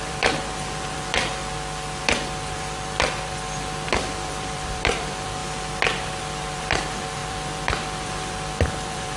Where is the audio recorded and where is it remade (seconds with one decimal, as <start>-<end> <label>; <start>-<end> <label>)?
0.0-1.4 remade; 1.4-2.0 recorded; 2.0-5.4 remade; 5.4-6.2 recorded; 6.2-9.2 remade

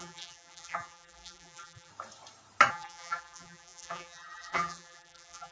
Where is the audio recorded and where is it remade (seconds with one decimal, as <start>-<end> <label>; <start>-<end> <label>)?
0.0-1.9 remade; 1.9-2.7 recorded; 2.7-5.5 remade

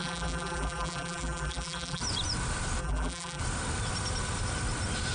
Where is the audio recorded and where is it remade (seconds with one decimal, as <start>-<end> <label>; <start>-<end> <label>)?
0.0-2.0 remade; 2.0-2.8 recorded; 2.8-3.4 remade; 3.4-5.1 recorded

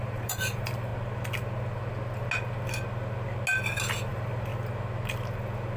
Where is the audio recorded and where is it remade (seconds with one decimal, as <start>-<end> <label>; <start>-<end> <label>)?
0.0-0.9 remade; 0.9-4.1 recorded; 4.1-4.5 remade; 4.5-5.8 recorded

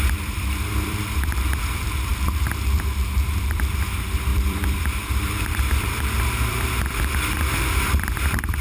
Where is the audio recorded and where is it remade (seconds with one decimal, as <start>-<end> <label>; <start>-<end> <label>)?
0.0-8.6 remade

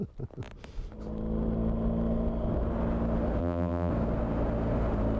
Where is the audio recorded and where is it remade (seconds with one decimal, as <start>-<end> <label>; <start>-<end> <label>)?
0.0-3.4 recorded; 3.4-3.9 remade; 3.9-5.2 recorded

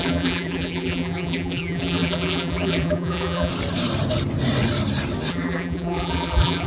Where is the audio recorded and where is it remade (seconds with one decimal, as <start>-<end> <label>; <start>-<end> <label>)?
0.0-3.5 remade; 3.5-5.3 recorded; 5.3-6.7 remade

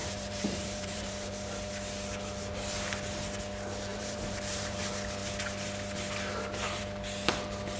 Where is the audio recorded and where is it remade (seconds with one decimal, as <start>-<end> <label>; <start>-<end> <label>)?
0.0-1.7 remade; 1.7-3.9 recorded; 3.9-4.8 remade; 4.8-7.8 recorded